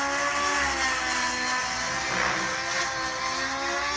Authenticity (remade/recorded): recorded